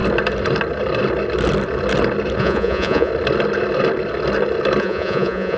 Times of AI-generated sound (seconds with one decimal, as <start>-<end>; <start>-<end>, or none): 2.4-3.1; 4.8-5.6